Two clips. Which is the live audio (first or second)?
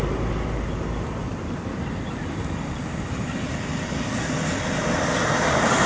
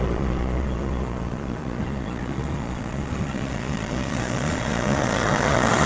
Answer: first